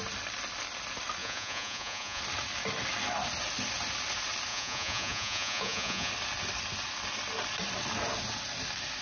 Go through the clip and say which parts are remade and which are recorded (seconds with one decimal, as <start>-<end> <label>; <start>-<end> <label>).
0.0-1.2 recorded; 1.2-2.2 remade; 2.2-4.5 recorded; 4.5-6.1 remade; 6.1-9.0 recorded